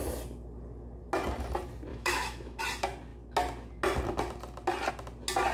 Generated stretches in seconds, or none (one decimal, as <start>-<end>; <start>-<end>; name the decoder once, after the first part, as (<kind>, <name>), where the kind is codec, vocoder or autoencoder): 1.9-2.6 (autoencoder, DAC-VAE)